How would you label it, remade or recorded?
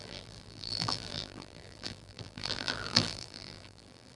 remade